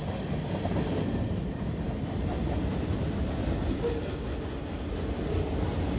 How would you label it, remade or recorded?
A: recorded